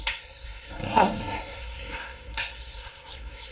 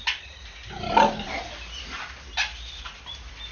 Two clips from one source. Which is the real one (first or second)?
second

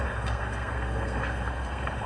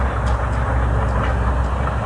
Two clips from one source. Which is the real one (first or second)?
second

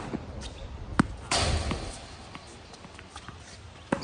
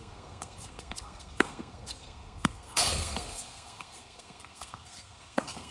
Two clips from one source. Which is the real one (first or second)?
first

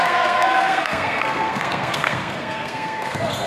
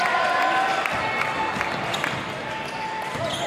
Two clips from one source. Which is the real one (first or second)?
second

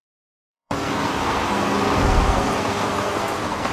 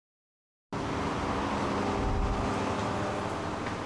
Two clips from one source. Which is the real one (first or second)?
second